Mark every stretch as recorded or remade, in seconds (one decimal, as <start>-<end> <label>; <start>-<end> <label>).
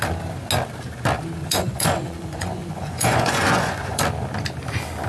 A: 0.0-1.4 recorded; 1.4-4.0 remade; 4.0-5.1 recorded